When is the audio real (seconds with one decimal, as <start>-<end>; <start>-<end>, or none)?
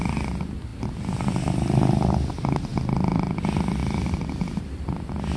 0.7-2.3; 2.7-3.4; 3.8-4.6